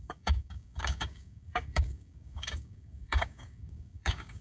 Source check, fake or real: fake